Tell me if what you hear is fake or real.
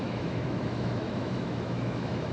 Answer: fake